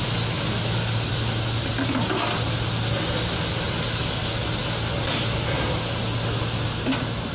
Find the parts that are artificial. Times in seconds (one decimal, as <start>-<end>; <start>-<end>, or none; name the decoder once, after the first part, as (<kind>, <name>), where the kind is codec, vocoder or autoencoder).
none